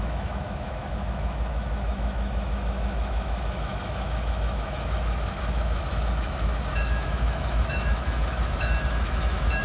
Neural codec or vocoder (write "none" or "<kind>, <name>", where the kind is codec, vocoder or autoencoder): autoencoder, DAC-VAE